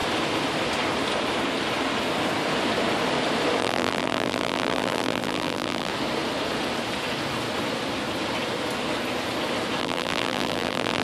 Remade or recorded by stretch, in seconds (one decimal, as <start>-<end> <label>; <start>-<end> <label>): 0.0-3.6 recorded; 3.6-5.9 remade; 5.9-9.8 recorded; 9.8-11.0 remade